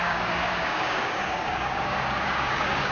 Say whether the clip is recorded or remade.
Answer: remade